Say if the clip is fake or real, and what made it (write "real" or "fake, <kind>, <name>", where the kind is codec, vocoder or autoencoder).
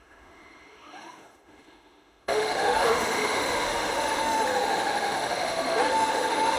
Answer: fake, autoencoder, DAC-VAE